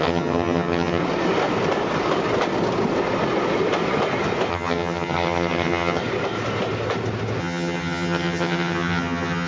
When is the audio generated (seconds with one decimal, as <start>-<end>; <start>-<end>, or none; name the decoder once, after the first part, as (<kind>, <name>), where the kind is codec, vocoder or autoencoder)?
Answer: 0.0-1.0 (vocoder, HiFi-GAN); 4.5-6.0; 7.4-9.5